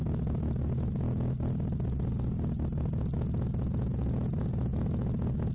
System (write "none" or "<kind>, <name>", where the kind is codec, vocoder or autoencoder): none